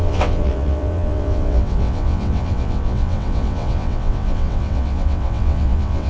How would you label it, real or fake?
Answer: fake